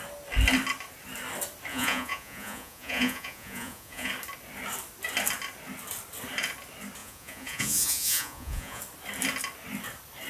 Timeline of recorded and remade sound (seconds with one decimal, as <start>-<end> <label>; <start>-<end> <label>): 0.0-1.7 recorded; 1.7-4.1 remade; 4.1-7.0 recorded; 7.0-8.8 remade; 8.8-10.3 recorded